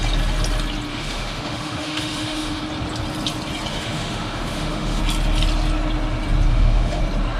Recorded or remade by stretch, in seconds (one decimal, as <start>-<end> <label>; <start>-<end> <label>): 0.0-0.9 recorded; 0.9-2.6 remade; 2.6-3.7 recorded; 3.7-5.0 remade; 5.0-6.5 recorded; 6.5-7.0 remade; 7.0-7.4 recorded